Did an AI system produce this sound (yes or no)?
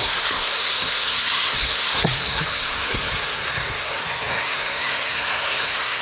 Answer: yes